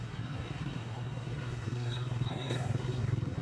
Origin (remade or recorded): remade